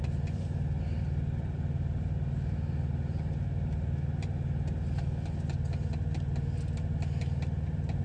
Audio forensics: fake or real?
real